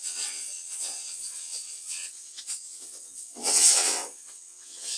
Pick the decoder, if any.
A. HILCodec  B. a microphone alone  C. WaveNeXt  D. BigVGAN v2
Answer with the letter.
C